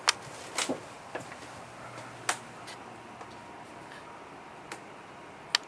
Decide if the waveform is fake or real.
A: real